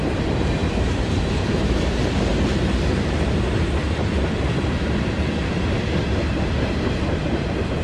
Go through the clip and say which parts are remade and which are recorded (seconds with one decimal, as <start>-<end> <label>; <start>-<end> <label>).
0.0-2.3 remade; 2.3-6.3 recorded; 6.3-7.8 remade